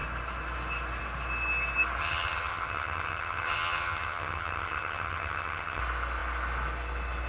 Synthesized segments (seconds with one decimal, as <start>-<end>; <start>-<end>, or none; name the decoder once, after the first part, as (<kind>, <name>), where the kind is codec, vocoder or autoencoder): 2.0-5.8 (vocoder, HiFi-GAN)